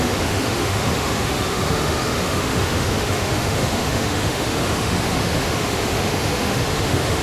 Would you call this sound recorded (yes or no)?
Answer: no